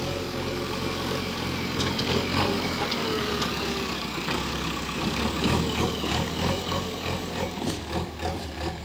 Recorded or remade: remade